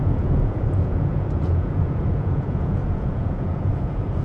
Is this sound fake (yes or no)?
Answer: yes